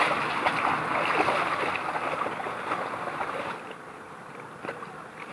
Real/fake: real